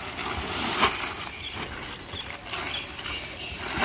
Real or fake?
real